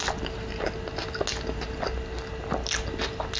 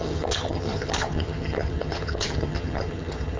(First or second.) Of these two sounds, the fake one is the second